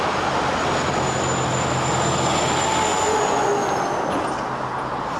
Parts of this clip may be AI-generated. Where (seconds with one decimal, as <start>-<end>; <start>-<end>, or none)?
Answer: 2.9-3.5